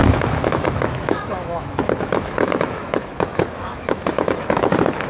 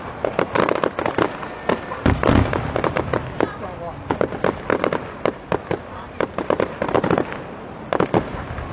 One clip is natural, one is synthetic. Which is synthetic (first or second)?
first